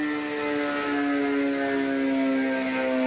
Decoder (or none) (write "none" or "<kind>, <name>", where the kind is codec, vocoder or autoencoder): none